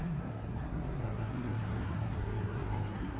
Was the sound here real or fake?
fake